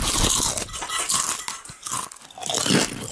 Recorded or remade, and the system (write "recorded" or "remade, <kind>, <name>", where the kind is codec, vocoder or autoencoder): recorded